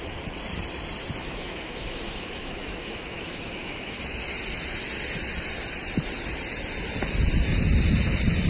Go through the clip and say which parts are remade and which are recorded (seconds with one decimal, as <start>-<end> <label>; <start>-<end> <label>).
0.0-1.2 recorded; 1.2-4.0 remade; 4.0-8.5 recorded